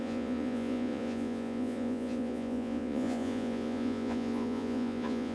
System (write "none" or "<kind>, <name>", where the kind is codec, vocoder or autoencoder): vocoder, Vocos